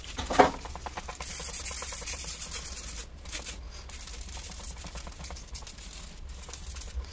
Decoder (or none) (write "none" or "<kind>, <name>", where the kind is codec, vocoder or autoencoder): none